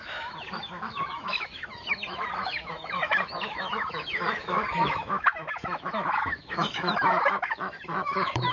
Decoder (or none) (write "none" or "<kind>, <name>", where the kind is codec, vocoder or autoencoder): autoencoder, DAC-VAE